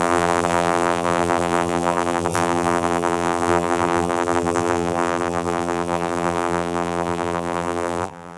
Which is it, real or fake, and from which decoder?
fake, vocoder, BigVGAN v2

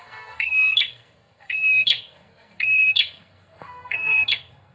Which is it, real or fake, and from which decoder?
fake, codec, SNAC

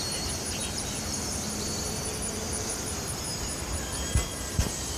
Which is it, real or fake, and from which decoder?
fake, vocoder, BigVGAN v2